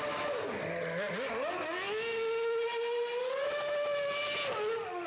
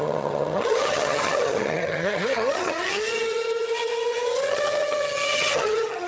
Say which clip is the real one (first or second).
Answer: first